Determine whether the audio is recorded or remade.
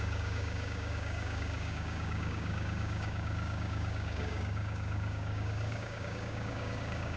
remade